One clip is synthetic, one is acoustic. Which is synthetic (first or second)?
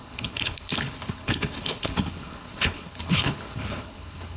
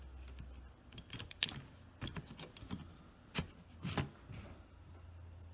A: first